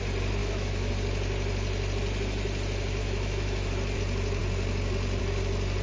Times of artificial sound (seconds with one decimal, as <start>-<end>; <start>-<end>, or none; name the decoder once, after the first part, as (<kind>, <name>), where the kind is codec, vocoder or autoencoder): 0.4-0.9 (autoencoder, DAC-VAE); 3.0-3.7